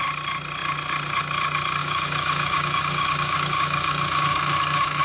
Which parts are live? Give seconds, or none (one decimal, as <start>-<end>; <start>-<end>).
0.0-1.8